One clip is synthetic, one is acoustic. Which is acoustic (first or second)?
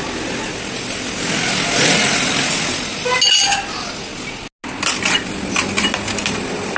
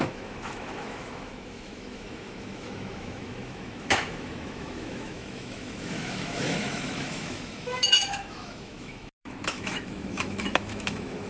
first